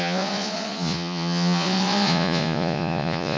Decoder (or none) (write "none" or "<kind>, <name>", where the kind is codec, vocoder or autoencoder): vocoder, Vocos